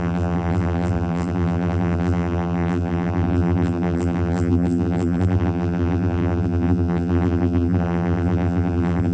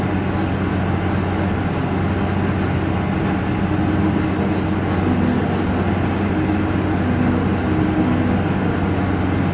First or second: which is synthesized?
first